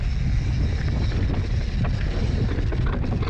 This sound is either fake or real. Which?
real